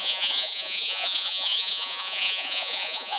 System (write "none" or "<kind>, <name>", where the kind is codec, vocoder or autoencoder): vocoder, Vocos